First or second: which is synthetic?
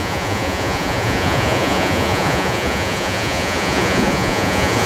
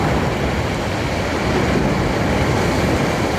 first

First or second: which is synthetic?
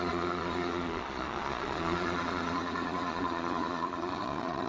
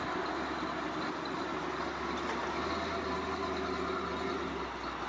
first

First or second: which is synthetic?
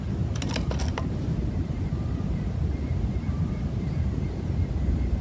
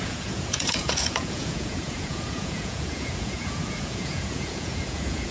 second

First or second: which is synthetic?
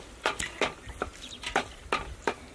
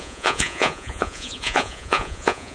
second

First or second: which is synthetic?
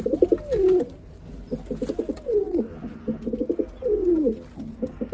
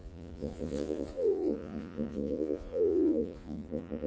second